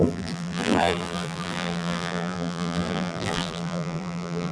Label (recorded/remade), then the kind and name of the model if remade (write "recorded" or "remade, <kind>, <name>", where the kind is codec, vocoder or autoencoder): remade, vocoder, BigVGAN v2